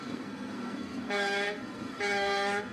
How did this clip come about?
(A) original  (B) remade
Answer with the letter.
B